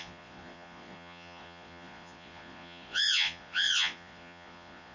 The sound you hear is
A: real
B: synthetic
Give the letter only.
B